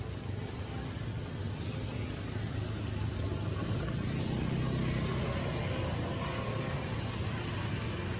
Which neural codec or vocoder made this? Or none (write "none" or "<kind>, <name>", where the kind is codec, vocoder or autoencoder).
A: none